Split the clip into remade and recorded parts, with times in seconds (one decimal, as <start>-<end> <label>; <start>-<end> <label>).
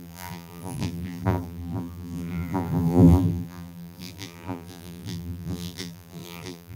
0.0-6.8 remade